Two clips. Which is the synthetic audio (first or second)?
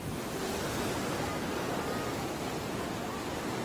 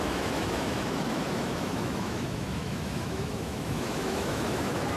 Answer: second